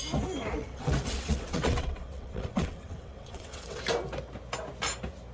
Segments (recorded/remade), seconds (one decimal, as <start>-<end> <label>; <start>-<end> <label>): 0.0-0.6 recorded; 0.6-3.8 remade; 3.8-5.3 recorded